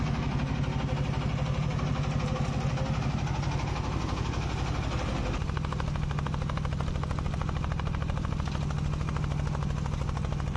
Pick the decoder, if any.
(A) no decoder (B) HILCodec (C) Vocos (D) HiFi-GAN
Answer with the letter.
A